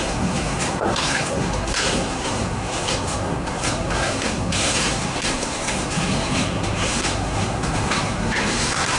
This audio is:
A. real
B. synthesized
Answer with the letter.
B